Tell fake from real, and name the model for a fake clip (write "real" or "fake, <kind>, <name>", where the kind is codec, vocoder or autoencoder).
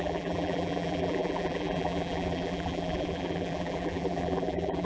fake, vocoder, BigVGAN v2